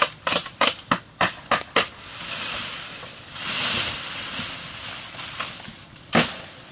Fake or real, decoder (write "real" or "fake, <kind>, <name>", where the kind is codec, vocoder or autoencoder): real